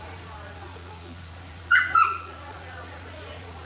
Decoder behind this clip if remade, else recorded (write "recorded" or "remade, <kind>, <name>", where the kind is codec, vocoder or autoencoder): remade, vocoder, Vocos